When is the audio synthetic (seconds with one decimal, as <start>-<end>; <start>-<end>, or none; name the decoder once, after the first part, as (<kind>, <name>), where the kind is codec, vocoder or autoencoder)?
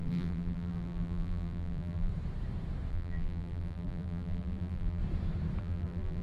0.0-2.1 (vocoder, BigVGAN v2); 2.9-5.0; 5.6-6.2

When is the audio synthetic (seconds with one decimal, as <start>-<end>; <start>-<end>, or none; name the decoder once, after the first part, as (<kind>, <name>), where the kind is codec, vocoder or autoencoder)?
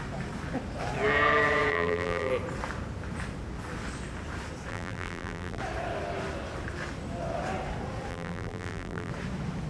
1.7-2.3 (vocoder, BigVGAN v2); 4.7-5.6; 8.1-9.1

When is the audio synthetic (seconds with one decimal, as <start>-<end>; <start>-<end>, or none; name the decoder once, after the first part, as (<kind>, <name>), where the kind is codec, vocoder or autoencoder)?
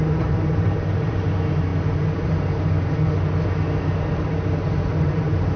0.0-1.7 (vocoder, BigVGAN v2); 5.0-5.6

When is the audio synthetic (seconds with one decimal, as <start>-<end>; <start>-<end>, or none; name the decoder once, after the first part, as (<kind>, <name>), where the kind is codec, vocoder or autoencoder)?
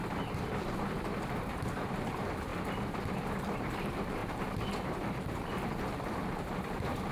1.7-2.5 (vocoder, BigVGAN v2); 3.6-7.1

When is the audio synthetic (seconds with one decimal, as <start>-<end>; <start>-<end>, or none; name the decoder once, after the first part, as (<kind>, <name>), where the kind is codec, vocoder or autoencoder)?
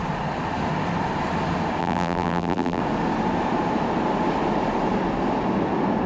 1.8-2.8 (vocoder, BigVGAN v2)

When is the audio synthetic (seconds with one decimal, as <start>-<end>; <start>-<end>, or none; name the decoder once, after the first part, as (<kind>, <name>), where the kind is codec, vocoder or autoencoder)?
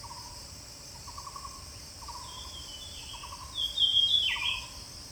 0.0-3.1 (vocoder, BigVGAN v2); 3.9-4.5